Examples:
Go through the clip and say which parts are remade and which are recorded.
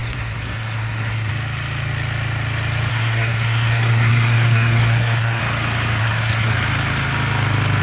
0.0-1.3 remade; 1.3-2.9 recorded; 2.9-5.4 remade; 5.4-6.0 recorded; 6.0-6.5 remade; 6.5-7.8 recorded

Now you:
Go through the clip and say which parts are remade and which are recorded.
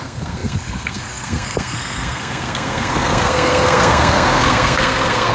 0.0-5.3 remade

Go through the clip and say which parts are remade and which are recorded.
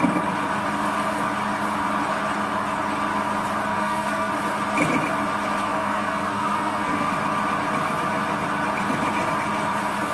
0.0-3.7 recorded; 3.7-4.3 remade; 4.3-5.6 recorded; 5.6-7.1 remade; 7.1-10.1 recorded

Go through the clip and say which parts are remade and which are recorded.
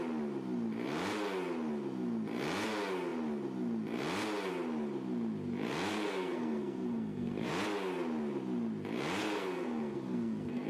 0.0-5.9 recorded; 5.9-7.5 remade; 7.5-9.2 recorded; 9.2-10.7 remade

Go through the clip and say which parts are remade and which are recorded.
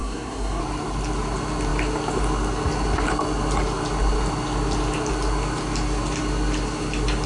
0.0-0.6 remade; 0.6-7.3 recorded